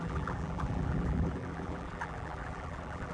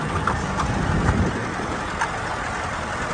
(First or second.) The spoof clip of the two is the first